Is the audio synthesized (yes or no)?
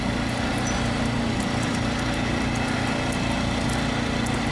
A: no